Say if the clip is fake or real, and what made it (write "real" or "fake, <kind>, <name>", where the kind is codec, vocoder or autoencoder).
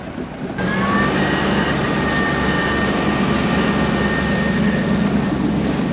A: real